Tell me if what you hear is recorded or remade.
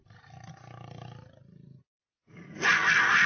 recorded